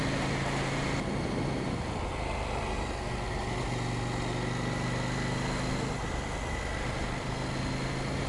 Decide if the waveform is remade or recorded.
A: recorded